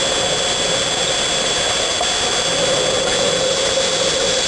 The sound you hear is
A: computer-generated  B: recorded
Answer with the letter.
B